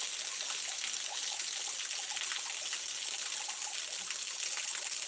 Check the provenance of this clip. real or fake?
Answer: real